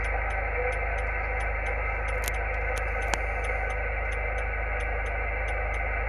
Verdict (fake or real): real